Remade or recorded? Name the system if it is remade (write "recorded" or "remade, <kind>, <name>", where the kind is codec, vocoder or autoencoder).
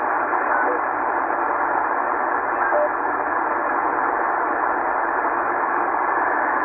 recorded